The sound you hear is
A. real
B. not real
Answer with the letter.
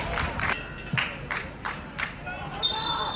B